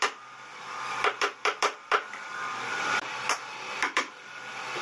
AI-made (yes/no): yes